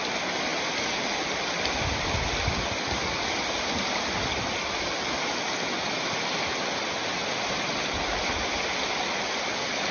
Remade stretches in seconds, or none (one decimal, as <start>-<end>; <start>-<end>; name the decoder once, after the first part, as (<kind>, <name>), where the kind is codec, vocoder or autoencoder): none

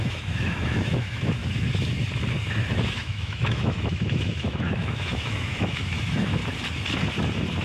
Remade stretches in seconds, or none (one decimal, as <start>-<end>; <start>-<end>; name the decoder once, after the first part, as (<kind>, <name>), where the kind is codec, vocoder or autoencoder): 0.0-1.4 (autoencoder, DAC-VAE); 2.7-6.4